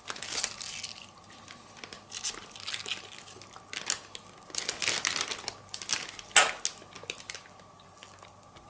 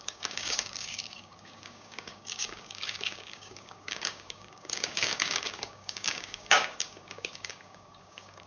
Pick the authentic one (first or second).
first